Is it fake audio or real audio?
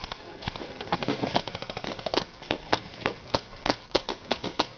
fake